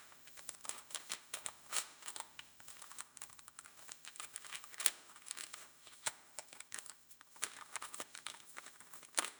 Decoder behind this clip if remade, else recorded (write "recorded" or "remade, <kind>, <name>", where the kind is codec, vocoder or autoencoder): remade, autoencoder, DAC-VAE